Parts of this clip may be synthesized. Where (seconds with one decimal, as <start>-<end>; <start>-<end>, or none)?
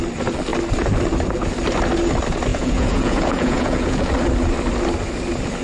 2.5-4.1